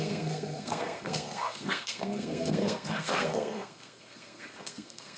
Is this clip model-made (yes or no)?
yes